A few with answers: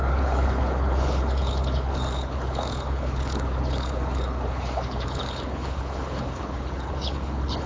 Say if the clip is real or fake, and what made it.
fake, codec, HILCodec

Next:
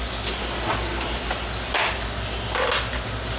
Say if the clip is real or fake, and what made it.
real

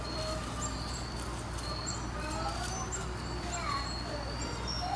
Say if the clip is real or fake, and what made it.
real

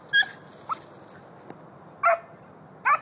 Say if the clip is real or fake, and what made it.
real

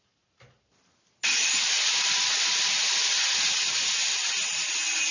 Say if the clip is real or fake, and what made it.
real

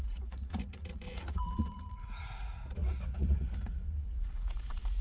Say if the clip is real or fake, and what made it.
fake, vocoder, Vocos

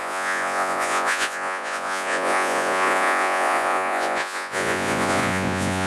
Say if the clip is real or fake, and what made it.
fake, vocoder, Vocos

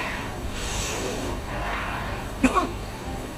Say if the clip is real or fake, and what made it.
fake, codec, DAC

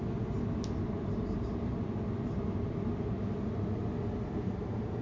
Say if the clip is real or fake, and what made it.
real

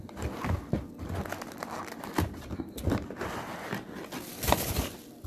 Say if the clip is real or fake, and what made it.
real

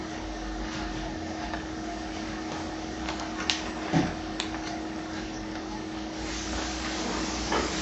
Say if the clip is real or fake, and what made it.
fake, codec, DAC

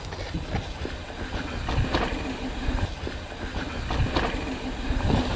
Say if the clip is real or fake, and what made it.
real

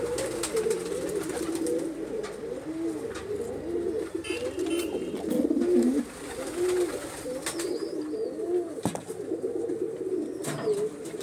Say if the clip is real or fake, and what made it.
real